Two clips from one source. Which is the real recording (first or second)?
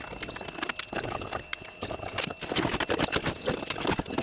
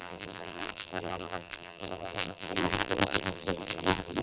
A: first